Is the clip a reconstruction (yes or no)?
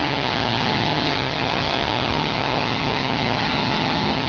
yes